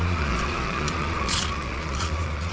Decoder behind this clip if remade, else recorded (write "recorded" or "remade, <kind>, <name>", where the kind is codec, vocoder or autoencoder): remade, vocoder, Vocos